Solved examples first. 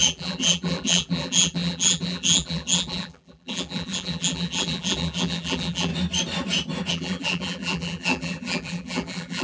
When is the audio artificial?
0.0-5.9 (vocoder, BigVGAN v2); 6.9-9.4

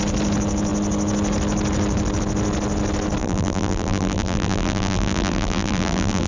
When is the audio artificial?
3.2-6.3 (vocoder, BigVGAN v2)